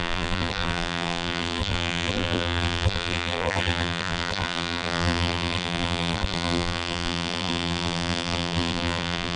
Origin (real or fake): fake